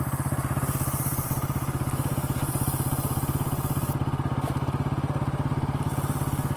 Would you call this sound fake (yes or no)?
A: no